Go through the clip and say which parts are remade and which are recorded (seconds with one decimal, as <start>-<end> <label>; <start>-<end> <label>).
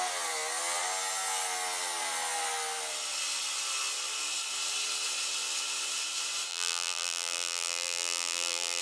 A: 0.0-6.5 recorded; 6.5-8.8 remade